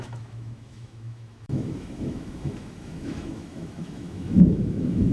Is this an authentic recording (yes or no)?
no